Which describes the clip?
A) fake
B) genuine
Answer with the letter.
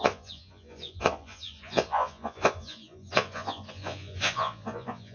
A